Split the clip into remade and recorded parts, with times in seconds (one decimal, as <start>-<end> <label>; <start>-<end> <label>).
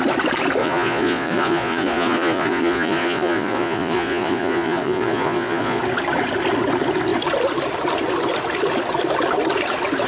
0.0-0.6 recorded; 0.6-5.8 remade; 5.8-10.1 recorded